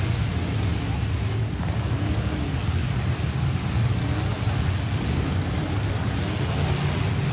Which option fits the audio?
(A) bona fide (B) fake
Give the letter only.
A